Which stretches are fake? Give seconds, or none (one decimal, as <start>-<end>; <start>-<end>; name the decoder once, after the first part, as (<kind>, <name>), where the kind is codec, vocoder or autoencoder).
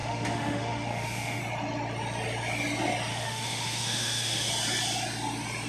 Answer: 0.0-1.4 (autoencoder, DAC-VAE); 3.1-4.5